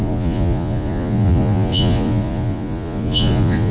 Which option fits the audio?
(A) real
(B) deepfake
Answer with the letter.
B